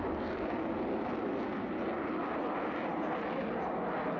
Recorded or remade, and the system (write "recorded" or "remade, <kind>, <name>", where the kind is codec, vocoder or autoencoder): recorded